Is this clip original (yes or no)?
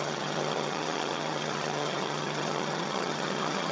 no